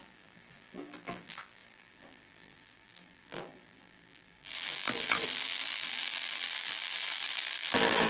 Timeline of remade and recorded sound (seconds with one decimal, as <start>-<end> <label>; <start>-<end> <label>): 0.0-8.1 remade